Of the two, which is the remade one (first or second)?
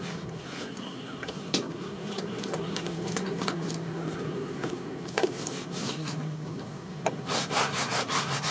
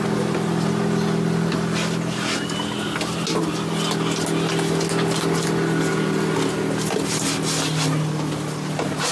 first